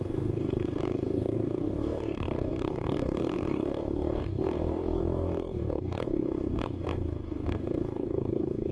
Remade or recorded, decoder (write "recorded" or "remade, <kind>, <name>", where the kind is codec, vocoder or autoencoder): remade, codec, DAC